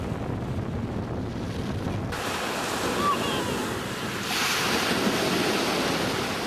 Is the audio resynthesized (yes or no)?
no